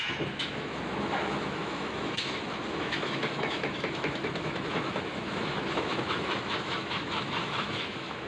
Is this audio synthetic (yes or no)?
yes